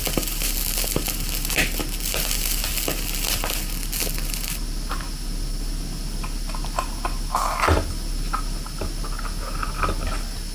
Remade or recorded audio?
recorded